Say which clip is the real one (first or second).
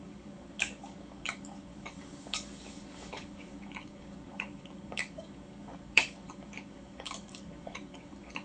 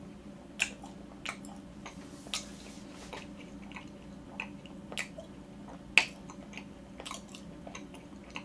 second